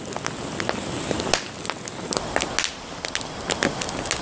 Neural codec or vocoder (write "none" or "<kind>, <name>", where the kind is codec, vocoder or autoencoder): none